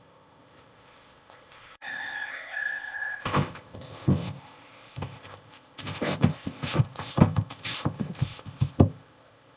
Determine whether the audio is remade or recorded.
remade